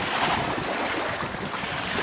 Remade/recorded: recorded